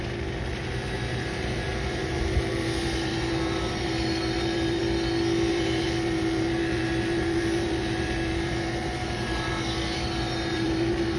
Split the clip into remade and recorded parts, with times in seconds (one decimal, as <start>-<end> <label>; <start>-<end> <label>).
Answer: 0.0-4.8 remade; 4.8-5.5 recorded; 5.5-9.5 remade; 9.5-10.5 recorded; 10.5-11.2 remade